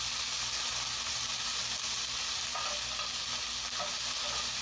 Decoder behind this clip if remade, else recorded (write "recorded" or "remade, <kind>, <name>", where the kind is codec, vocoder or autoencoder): recorded